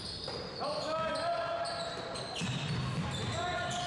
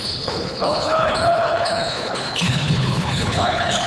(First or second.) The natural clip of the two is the first